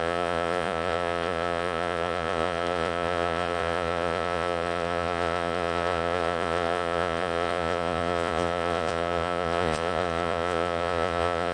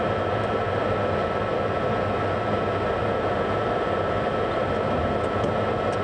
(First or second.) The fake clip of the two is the first